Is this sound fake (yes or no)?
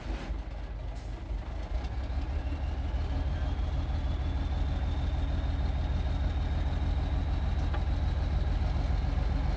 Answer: no